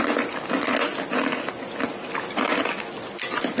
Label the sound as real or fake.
real